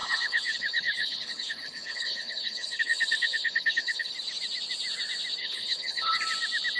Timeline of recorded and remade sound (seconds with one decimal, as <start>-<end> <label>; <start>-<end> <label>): 0.0-4.1 remade; 4.1-5.4 recorded; 5.4-6.2 remade; 6.2-6.8 recorded